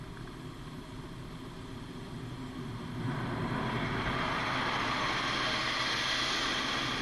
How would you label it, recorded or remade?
recorded